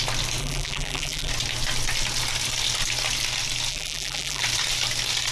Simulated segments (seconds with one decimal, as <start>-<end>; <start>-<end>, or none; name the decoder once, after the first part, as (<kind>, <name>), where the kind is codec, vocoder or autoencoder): 0.4-1.3 (vocoder, BigVGAN v2); 3.7-4.4